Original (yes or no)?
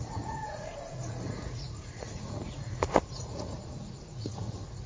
no